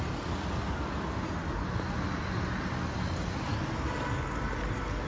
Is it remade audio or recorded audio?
recorded